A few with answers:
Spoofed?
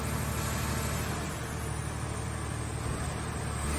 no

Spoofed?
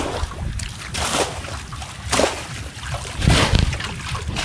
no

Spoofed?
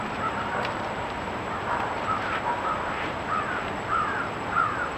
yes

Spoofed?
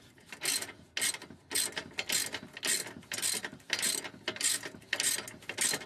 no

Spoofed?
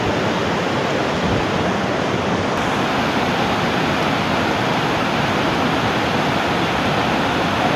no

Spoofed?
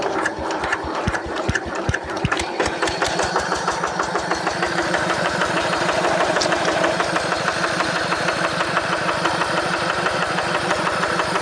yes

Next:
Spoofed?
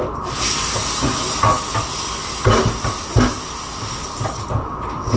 no